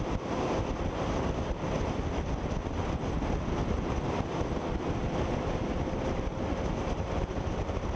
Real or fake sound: real